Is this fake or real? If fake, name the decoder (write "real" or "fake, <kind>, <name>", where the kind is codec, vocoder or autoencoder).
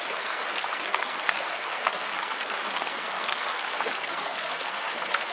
fake, codec, SNAC